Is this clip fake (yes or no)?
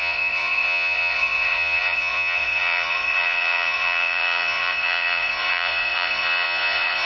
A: yes